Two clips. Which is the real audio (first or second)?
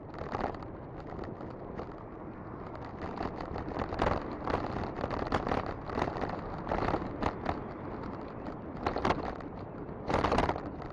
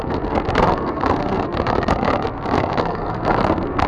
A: first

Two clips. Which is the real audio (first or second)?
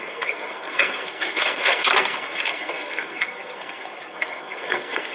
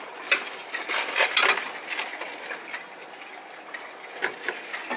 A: second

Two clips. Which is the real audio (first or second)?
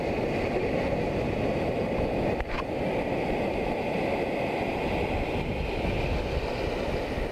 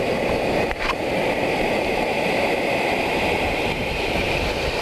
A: first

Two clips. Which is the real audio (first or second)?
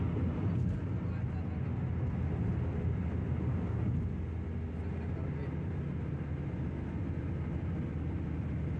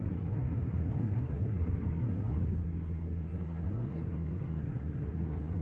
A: first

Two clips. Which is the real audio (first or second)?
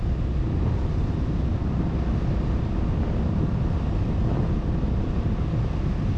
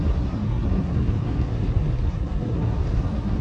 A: first